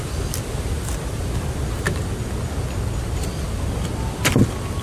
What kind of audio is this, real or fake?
real